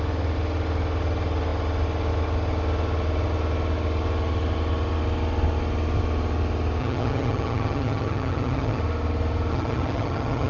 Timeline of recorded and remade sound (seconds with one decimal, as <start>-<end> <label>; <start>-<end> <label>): 0.0-6.8 recorded; 6.8-8.8 remade; 8.8-9.5 recorded; 9.5-10.5 remade